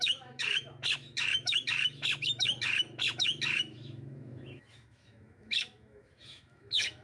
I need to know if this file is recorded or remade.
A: remade